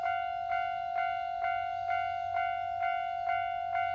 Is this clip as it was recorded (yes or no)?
yes